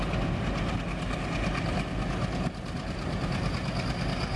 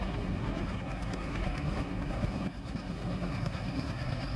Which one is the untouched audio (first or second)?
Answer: first